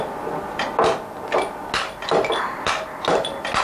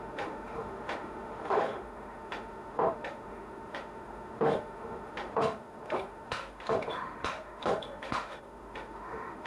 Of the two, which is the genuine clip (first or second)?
first